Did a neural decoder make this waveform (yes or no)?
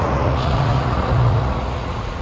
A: yes